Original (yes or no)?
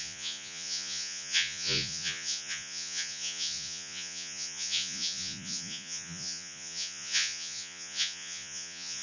no